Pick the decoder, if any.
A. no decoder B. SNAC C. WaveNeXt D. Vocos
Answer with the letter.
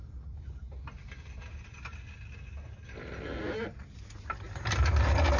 A